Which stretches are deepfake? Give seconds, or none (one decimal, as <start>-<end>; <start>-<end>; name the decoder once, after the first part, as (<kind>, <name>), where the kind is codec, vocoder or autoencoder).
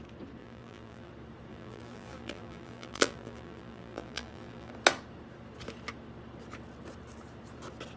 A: 0.4-1.1 (vocoder, BigVGAN v2); 1.5-4.7